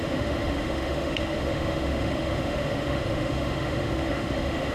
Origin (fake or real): fake